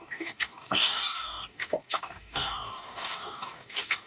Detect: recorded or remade remade